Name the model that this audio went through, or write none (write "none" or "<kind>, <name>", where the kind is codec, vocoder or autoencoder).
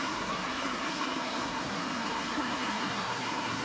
codec, SNAC